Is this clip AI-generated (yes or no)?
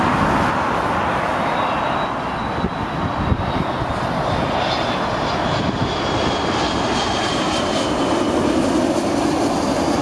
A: no